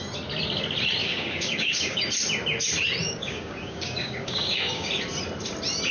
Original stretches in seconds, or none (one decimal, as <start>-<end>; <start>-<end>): 0.0-1.0; 2.1-3.0; 4.9-5.9